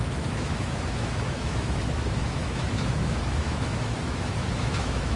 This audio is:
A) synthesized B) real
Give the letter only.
A